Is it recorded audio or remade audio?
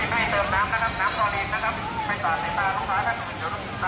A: recorded